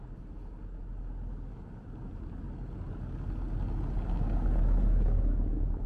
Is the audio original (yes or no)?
yes